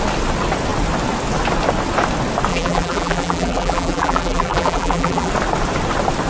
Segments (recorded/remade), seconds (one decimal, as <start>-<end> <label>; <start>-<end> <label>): 0.0-2.5 recorded; 2.5-5.3 remade; 5.3-6.3 recorded